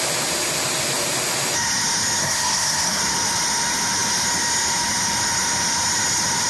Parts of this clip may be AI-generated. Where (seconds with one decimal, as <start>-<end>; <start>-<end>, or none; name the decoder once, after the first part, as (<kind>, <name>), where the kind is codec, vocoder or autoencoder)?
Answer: 2.2-3.0 (codec, SNAC)